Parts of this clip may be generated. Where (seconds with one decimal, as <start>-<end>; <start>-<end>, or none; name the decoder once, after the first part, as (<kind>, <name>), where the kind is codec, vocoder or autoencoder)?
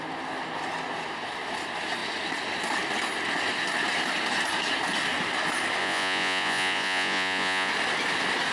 5.8-7.7 (vocoder, Vocos)